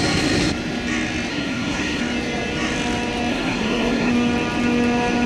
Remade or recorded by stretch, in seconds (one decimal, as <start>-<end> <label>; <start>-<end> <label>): 0.0-1.3 recorded; 1.3-2.0 remade; 2.0-3.3 recorded; 3.3-4.1 remade; 4.1-5.3 recorded